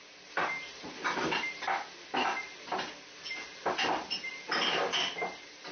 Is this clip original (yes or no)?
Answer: yes